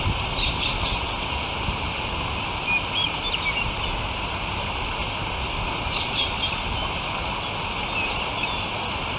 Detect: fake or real real